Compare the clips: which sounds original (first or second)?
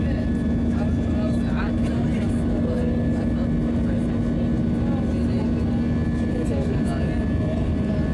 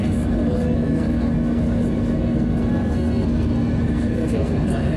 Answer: first